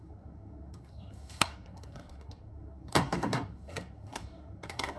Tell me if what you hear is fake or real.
fake